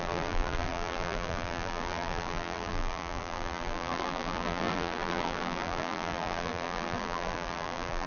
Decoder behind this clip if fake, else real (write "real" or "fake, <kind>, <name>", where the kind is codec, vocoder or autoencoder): fake, vocoder, BigVGAN v2